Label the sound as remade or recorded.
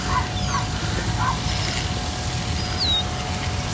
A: recorded